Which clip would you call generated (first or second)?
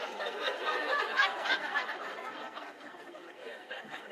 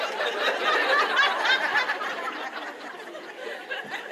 first